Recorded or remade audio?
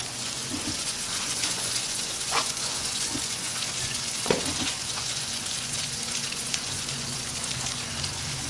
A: remade